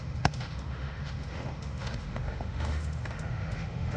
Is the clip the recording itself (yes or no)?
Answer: no